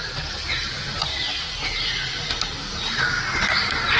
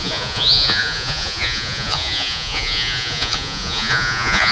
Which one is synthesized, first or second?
second